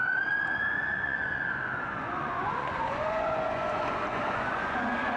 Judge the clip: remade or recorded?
remade